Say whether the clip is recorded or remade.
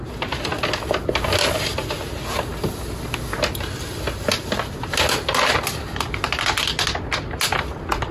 recorded